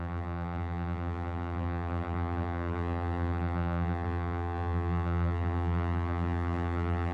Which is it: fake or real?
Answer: fake